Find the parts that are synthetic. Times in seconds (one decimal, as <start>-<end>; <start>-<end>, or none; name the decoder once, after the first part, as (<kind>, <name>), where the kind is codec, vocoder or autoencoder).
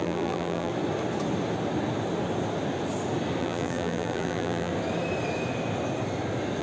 0.0-0.7 (vocoder, BigVGAN v2); 3.4-4.7